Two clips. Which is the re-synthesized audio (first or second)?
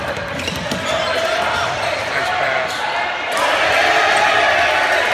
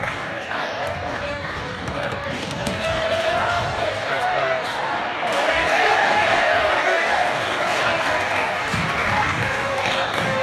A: second